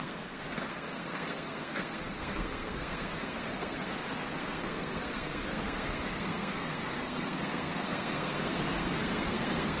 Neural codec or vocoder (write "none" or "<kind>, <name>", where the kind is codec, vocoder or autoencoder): codec, SNAC